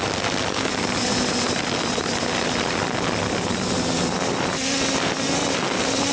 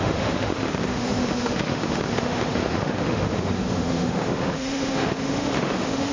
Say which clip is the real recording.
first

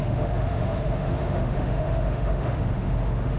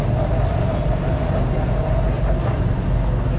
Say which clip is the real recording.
second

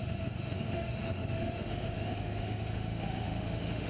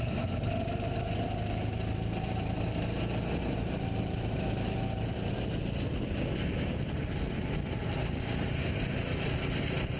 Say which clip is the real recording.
second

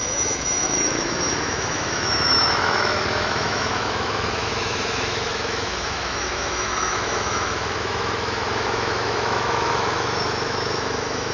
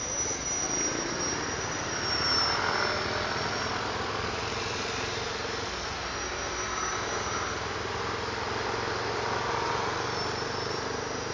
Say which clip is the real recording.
second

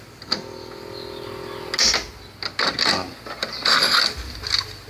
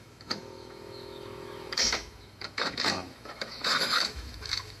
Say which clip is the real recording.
first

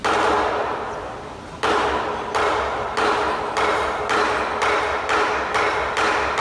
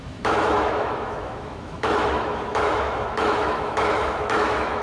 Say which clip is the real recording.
first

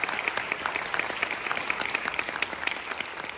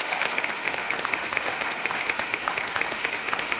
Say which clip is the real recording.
first